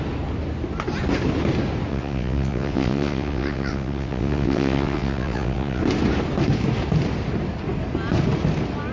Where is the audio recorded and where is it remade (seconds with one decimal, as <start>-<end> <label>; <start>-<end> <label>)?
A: 0.0-1.9 recorded; 1.9-5.8 remade; 5.8-8.9 recorded